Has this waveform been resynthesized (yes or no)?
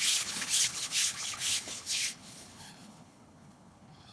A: yes